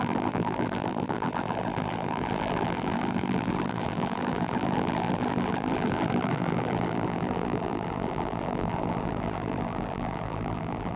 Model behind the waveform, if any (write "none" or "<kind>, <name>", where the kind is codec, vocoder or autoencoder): vocoder, BigVGAN v2